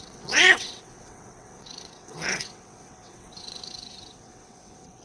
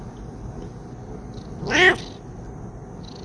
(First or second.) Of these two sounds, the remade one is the first